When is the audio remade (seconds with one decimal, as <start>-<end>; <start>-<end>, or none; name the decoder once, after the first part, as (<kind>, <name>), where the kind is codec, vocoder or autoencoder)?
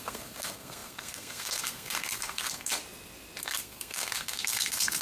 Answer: 0.0-2.8 (codec, SNAC); 3.4-5.0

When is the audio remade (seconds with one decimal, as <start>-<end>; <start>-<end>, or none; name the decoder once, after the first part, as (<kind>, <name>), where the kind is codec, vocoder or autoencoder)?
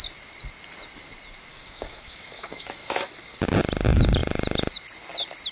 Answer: 1.5-3.4 (codec, DAC)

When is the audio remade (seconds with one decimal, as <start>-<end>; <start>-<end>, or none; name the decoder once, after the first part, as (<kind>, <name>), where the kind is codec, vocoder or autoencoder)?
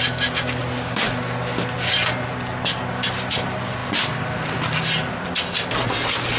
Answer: 0.6-2.3 (vocoder, BigVGAN v2); 3.8-5.2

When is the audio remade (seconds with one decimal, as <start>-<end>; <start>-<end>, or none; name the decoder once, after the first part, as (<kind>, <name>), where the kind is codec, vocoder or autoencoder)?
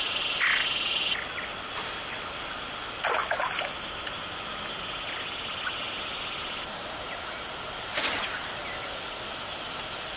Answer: none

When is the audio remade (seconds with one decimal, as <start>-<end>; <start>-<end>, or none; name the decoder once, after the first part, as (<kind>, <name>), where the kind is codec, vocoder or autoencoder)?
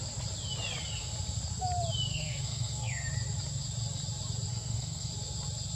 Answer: 2.1-3.1 (codec, SNAC); 4.5-5.1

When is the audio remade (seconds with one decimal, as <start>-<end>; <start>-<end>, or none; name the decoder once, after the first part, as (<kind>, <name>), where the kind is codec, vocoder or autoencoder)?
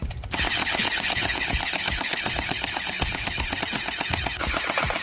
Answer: 0.6-3.6 (codec, HILCodec)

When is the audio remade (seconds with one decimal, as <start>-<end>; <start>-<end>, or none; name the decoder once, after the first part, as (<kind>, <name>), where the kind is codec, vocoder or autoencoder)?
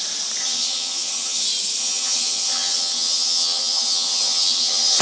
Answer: 0.4-1.4 (vocoder, HiFi-GAN); 1.8-5.0